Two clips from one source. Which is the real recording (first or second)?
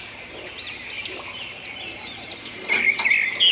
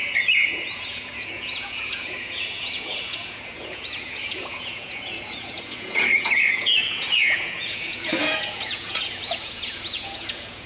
first